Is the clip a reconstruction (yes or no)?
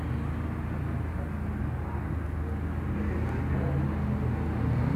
no